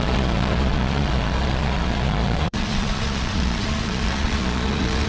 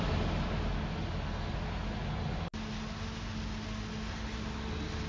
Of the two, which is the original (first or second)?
second